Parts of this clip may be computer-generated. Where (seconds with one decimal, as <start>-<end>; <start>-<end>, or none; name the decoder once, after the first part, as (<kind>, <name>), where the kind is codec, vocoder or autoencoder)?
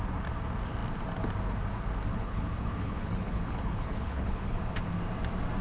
2.1-4.6 (codec, HILCodec)